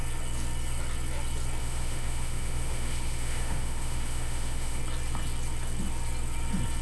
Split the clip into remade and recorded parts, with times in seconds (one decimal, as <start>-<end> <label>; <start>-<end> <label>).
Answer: 0.0-1.6 recorded; 1.6-4.8 remade; 4.8-6.8 recorded